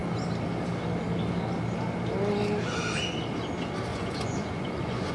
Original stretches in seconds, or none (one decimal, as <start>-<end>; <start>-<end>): 0.0-3.9